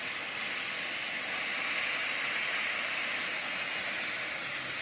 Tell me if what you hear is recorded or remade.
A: recorded